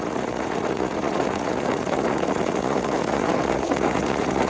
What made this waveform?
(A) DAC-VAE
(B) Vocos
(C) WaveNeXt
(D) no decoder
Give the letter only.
B